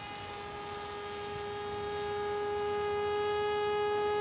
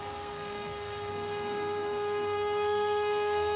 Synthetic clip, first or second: second